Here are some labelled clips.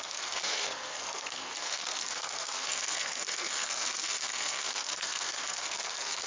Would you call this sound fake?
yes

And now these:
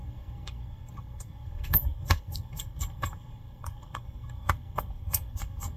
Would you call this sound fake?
yes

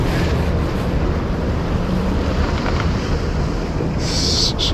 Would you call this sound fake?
no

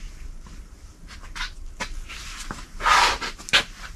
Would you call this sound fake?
no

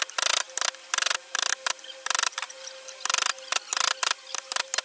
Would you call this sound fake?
no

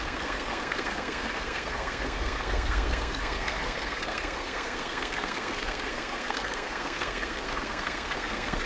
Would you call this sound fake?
yes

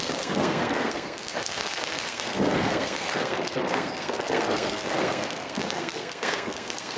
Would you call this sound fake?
yes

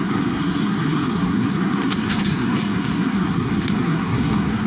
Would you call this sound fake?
yes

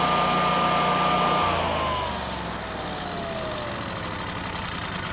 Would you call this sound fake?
no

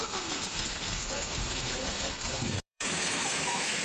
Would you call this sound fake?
yes